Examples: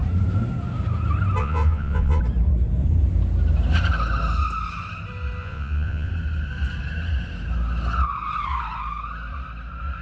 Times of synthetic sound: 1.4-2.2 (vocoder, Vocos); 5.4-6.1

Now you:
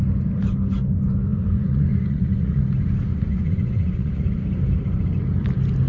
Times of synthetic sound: 1.3-2.6 (vocoder, Vocos); 3.1-4.2

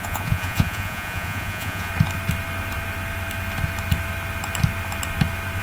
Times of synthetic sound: 0.0-1.9 (vocoder, Vocos)